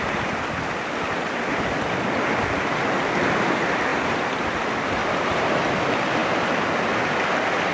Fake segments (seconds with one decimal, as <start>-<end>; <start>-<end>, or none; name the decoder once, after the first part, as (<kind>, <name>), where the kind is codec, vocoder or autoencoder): 3.9-4.6 (vocoder, BigVGAN v2); 5.0-5.6